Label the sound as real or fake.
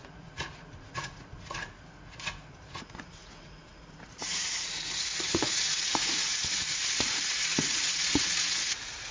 fake